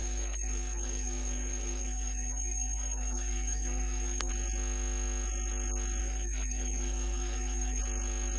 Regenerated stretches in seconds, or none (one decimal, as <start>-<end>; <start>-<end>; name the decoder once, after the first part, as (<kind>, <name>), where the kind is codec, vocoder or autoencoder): 0.0-4.3 (codec, SNAC); 6.0-7.8